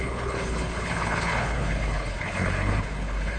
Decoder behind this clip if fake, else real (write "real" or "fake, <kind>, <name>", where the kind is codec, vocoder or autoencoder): fake, codec, HILCodec